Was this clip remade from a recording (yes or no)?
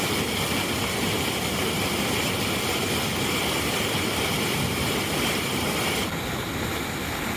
no